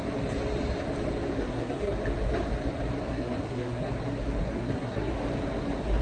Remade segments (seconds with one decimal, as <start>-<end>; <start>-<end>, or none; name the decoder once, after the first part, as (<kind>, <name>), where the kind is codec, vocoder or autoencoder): 1.3-1.9 (codec, SNAC); 3.1-3.9; 4.4-5.1

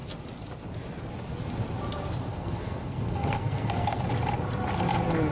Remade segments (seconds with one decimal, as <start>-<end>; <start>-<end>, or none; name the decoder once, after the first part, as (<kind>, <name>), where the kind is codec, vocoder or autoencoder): 2.3-4.0 (codec, SNAC)

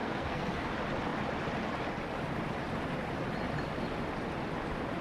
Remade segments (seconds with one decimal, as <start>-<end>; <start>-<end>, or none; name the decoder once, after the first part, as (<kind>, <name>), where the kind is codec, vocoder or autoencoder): 0.0-0.7 (codec, SNAC)